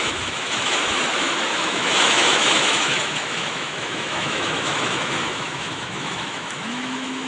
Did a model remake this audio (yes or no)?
yes